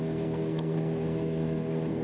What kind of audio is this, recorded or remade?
remade